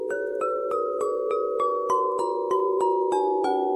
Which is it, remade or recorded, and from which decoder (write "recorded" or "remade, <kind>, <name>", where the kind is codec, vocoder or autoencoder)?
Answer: remade, vocoder, BigVGAN v2